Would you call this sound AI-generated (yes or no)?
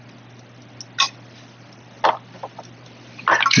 no